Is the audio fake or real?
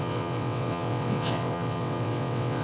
fake